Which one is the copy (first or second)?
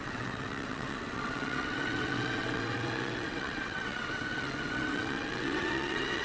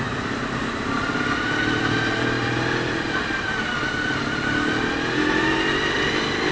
first